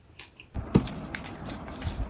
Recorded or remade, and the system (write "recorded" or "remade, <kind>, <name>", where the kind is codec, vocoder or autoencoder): recorded